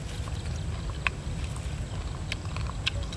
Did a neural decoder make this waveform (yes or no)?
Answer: no